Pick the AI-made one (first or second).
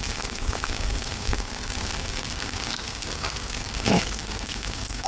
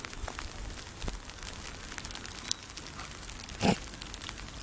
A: first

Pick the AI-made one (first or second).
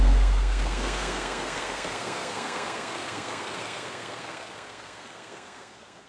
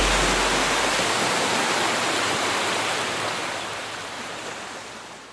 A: first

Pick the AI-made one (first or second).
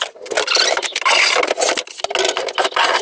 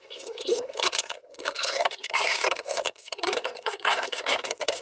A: second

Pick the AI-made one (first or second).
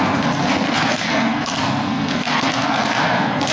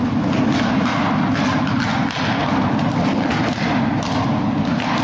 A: first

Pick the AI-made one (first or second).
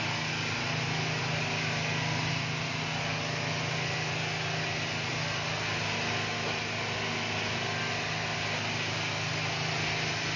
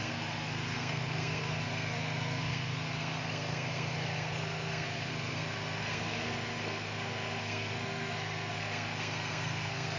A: second